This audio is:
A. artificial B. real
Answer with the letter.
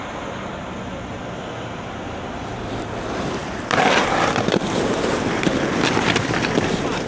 A